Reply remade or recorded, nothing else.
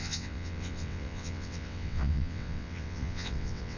remade